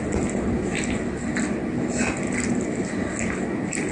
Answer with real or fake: real